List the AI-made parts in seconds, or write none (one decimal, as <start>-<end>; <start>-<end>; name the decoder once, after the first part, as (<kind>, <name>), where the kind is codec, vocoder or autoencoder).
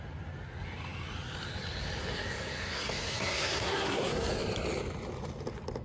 2.0-4.3 (codec, SNAC)